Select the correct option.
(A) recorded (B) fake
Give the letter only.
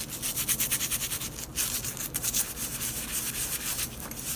A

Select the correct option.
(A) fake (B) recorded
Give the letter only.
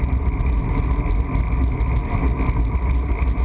B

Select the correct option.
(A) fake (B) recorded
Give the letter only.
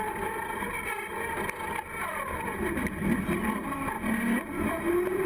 B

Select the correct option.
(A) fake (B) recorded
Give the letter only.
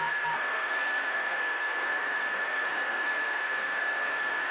A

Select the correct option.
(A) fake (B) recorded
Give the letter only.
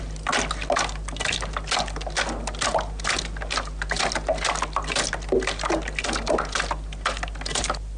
B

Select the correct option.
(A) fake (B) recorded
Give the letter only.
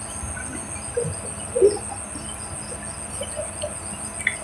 B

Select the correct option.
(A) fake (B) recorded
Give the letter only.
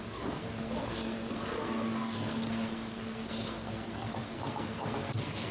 A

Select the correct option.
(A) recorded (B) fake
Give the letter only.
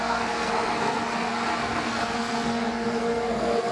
B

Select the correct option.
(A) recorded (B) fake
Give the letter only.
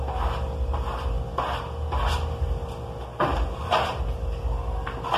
A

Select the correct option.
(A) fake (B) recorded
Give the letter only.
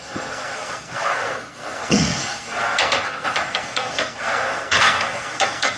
A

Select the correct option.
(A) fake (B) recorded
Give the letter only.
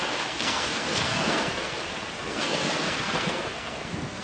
A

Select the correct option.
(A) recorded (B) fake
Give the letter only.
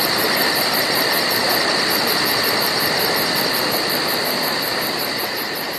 A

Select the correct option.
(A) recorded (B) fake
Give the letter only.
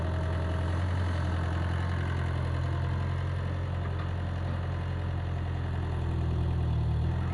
A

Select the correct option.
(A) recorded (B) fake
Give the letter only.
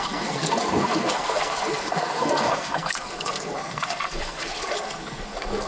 B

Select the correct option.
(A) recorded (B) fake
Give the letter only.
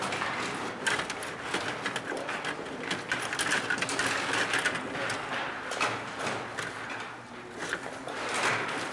A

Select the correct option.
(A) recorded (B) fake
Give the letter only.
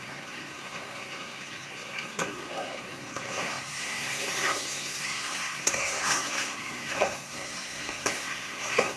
B